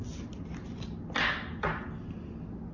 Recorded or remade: recorded